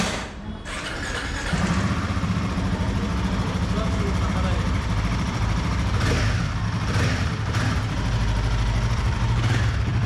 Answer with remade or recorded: remade